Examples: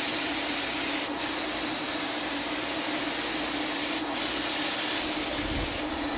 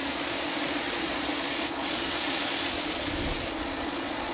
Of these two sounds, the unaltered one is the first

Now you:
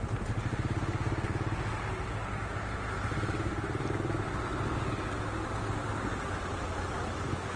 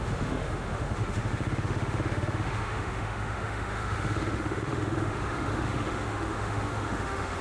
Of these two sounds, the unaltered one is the first